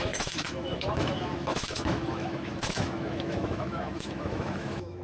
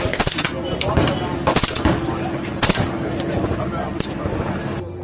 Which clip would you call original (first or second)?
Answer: second